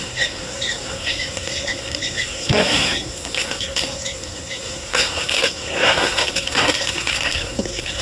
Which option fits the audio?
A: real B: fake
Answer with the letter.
B